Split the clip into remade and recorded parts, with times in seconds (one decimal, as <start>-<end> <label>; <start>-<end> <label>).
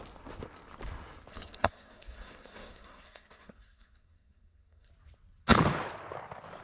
0.0-1.3 recorded; 1.3-4.9 remade; 4.9-6.6 recorded